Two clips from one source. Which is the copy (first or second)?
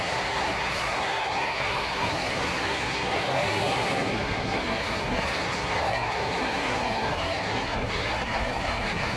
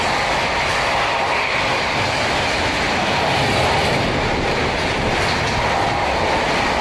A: first